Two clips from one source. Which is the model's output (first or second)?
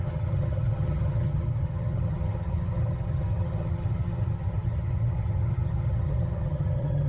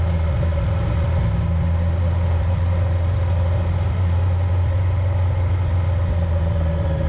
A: first